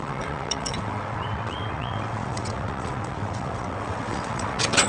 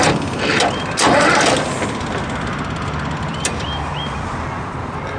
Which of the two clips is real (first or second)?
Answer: second